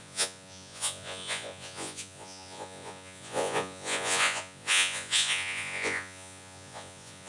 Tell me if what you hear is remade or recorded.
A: remade